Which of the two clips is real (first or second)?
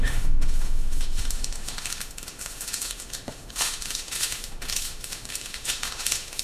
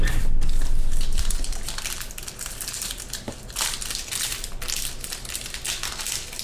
second